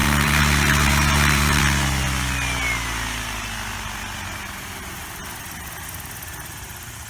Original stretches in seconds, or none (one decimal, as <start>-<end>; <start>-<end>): 1.6-7.1

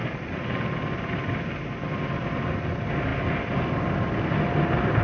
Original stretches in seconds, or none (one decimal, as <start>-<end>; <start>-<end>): 0.0-5.0

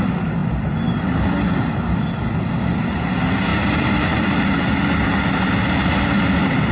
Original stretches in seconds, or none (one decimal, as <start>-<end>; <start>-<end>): 0.0-3.5; 6.0-6.7

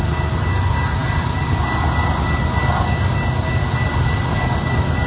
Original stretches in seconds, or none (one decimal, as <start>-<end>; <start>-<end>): 0.0-1.0; 1.6-5.1

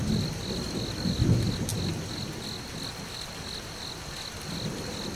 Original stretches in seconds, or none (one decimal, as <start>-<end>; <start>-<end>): 0.0-5.2

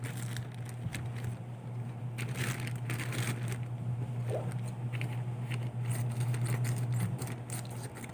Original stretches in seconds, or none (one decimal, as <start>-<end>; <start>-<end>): 0.0-8.1

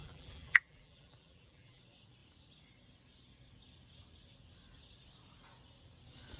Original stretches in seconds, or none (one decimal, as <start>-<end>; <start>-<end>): 1.8-6.4

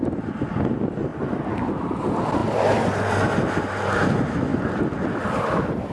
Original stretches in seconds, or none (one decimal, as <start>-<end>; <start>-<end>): 0.0-1.1; 1.7-2.4; 3.5-4.5; 5.4-5.9